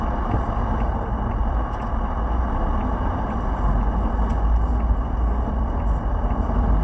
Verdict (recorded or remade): recorded